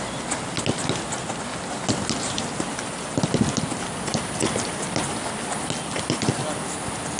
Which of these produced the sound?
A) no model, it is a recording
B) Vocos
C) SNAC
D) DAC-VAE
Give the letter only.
A